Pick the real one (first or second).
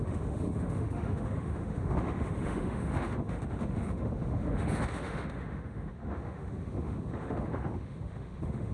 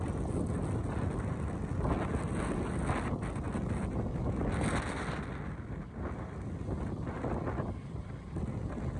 second